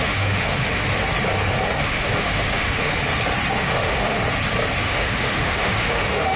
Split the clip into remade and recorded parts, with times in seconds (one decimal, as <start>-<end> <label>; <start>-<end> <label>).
0.0-1.0 remade; 1.0-1.8 recorded; 1.8-2.9 remade; 2.9-3.6 recorded; 3.6-4.2 remade; 4.2-4.8 recorded; 4.8-6.4 remade